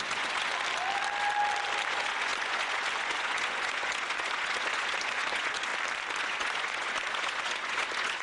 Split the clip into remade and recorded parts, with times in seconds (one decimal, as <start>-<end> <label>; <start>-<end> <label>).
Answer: 0.0-0.5 remade; 0.5-1.9 recorded; 1.9-5.7 remade; 5.7-6.2 recorded; 6.2-8.2 remade